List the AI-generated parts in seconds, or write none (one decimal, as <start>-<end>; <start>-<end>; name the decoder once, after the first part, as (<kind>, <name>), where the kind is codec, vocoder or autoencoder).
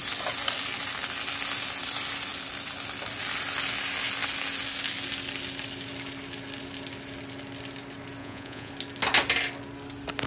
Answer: 8.2-8.7 (vocoder, Vocos)